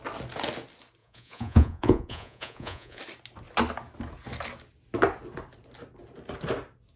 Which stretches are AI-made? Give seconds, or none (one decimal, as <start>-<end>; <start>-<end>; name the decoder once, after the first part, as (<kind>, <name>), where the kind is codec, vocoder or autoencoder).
1.0-3.0 (vocoder, Vocos)

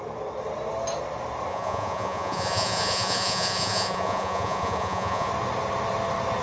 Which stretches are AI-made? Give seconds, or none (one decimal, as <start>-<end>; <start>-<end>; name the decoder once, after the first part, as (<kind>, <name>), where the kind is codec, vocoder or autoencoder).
1.5-5.3 (vocoder, Vocos)

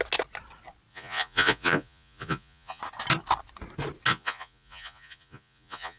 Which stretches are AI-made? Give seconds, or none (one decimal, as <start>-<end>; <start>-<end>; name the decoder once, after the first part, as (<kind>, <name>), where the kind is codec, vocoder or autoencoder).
0.9-2.8 (vocoder, Vocos); 4.1-6.0

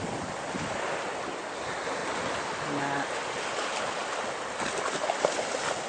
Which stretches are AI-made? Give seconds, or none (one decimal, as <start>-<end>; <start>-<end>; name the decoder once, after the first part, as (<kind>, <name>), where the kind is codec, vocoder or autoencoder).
none

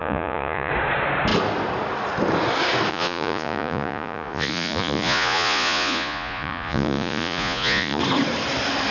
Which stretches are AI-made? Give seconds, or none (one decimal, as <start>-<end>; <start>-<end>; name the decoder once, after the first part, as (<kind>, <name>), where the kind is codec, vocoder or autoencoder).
0.0-0.7 (vocoder, Vocos); 2.9-8.0